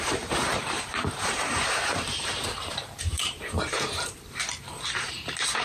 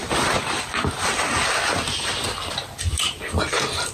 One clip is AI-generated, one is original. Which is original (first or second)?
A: second